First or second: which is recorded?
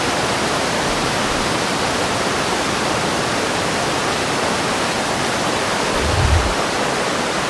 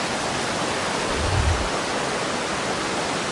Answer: second